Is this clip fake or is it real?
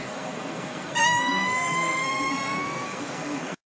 fake